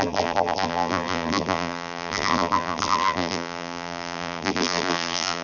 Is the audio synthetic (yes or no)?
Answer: yes